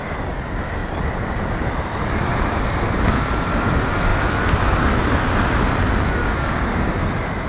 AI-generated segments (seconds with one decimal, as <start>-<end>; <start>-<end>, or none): 6.2-7.0